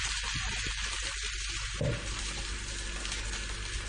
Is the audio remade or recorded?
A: recorded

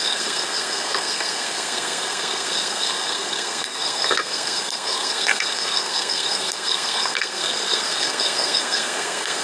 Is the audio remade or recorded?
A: remade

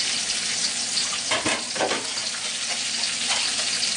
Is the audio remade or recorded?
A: recorded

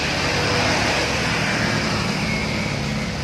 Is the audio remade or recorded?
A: recorded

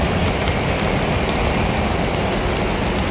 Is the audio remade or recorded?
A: recorded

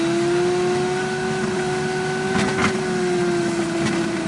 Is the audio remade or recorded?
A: recorded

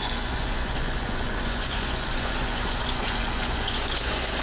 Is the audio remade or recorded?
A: remade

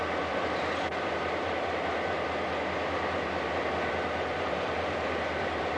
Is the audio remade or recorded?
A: remade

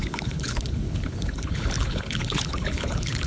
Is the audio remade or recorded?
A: remade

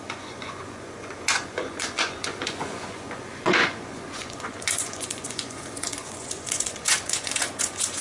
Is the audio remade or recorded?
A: remade